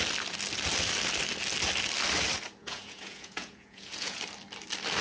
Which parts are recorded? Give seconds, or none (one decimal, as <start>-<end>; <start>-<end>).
0.0-2.6; 4.2-5.0